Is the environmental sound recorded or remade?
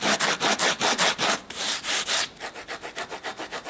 recorded